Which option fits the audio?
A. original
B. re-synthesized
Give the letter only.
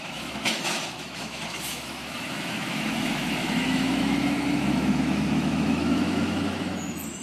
B